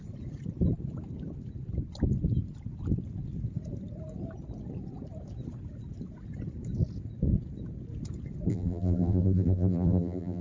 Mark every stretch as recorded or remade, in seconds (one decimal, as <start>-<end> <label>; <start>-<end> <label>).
0.0-8.5 recorded; 8.5-10.4 remade